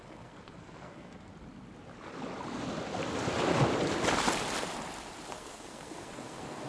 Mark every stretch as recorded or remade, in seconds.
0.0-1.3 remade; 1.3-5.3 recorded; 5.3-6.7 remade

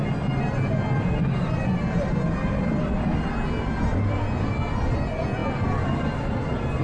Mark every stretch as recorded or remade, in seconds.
0.0-6.8 recorded

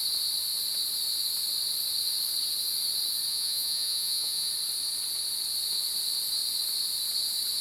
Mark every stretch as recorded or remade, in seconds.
0.0-3.3 recorded; 3.3-4.5 remade; 4.5-7.6 recorded

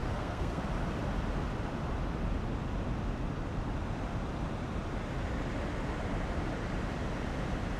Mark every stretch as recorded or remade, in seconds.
0.0-0.6 remade; 0.6-7.8 recorded

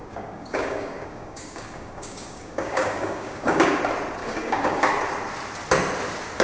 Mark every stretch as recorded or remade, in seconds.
0.0-3.8 remade; 3.8-4.2 recorded; 4.2-4.8 remade; 4.8-6.4 recorded

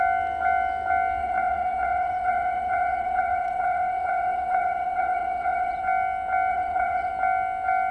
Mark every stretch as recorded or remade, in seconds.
0.0-1.2 recorded; 1.2-5.8 remade; 5.8-6.5 recorded; 6.5-7.1 remade; 7.1-7.9 recorded

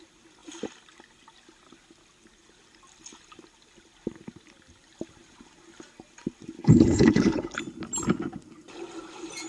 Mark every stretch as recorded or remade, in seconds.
0.0-6.6 recorded; 6.6-7.6 remade; 7.6-9.5 recorded

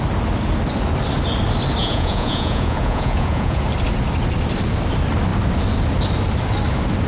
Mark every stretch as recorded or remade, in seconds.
0.0-1.8 recorded; 1.8-3.6 remade; 3.6-7.1 recorded